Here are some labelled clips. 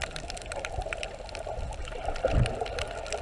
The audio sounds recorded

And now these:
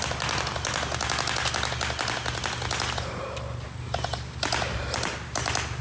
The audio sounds recorded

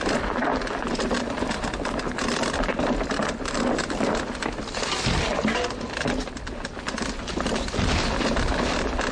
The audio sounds recorded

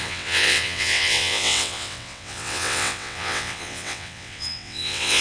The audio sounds remade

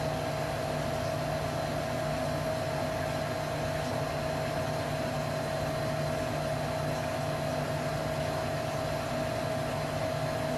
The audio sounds recorded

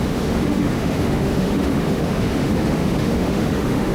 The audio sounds remade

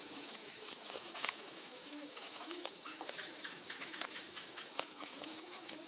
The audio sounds remade